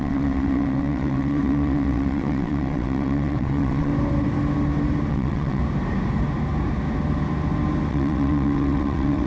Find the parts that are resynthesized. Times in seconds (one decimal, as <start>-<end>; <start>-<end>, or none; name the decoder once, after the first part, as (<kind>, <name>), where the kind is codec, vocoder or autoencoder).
0.0-3.9 (vocoder, WaveNeXt); 5.1-5.6; 7.9-9.3